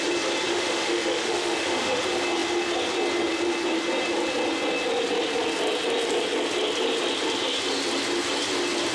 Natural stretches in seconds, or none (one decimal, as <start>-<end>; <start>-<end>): 0.0-0.5; 2.0-8.9